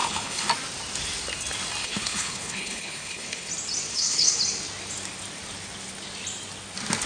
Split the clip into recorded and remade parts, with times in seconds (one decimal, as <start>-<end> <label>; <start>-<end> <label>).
0.0-0.5 remade; 0.5-1.8 recorded; 1.8-3.5 remade; 3.5-3.9 recorded; 3.9-4.4 remade; 4.4-7.1 recorded